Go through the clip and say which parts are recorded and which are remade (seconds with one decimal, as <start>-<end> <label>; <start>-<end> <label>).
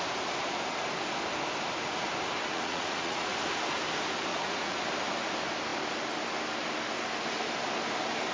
0.0-2.5 recorded; 2.5-3.3 remade; 3.3-4.3 recorded; 4.3-4.8 remade; 4.8-8.3 recorded